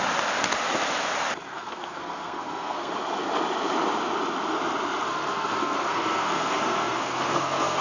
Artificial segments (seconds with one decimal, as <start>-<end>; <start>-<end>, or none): 1.5-2.9; 5.1-7.8